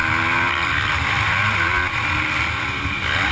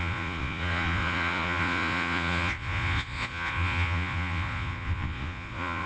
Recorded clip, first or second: first